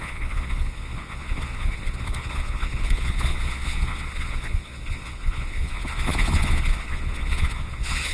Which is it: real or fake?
fake